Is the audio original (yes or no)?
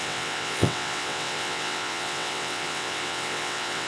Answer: no